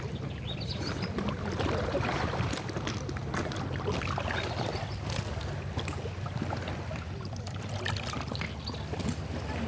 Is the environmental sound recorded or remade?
recorded